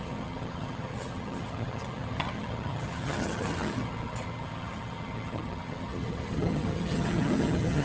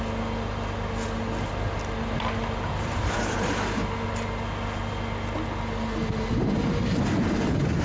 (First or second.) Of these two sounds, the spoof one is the first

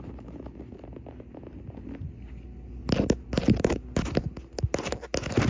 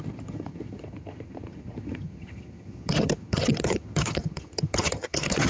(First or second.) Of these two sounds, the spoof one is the second